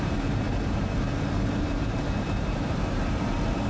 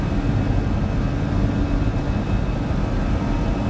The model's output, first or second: first